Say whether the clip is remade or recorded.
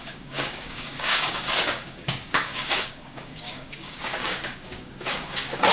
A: remade